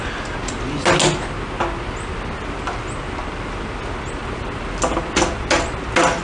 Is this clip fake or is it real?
real